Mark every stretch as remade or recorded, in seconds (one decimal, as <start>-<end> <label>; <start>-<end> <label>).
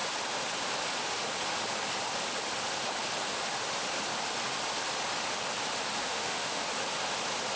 0.0-6.0 recorded; 6.0-6.6 remade; 6.6-7.6 recorded